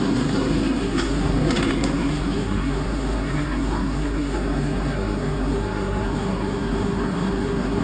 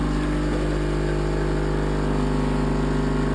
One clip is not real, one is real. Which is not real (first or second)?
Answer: first